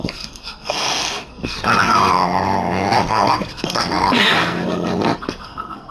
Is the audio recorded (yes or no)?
no